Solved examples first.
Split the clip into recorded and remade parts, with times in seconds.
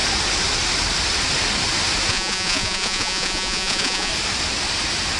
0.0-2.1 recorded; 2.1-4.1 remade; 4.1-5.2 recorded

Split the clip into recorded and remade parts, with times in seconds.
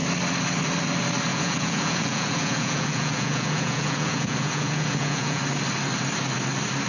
0.0-1.3 recorded; 1.3-5.4 remade; 5.4-6.9 recorded